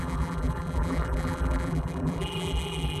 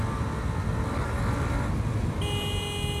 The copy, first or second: first